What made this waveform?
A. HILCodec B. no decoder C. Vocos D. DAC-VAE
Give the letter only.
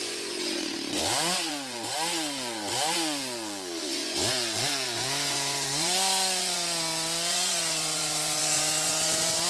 C